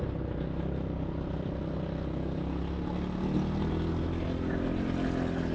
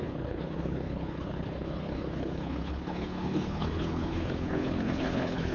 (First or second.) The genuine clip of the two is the first